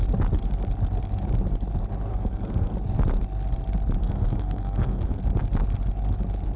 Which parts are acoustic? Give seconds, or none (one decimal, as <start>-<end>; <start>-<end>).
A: 0.0-2.1; 2.7-4.0; 5.2-6.6